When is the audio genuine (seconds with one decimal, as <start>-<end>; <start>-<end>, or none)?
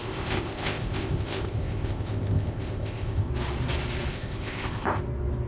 3.3-4.1; 5.0-5.5